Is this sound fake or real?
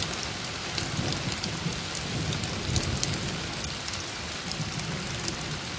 real